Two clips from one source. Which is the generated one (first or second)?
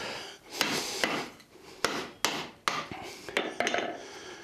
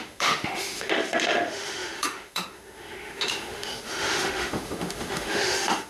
second